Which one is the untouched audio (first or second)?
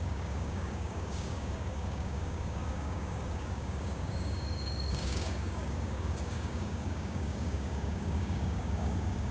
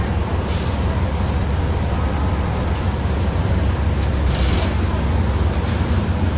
second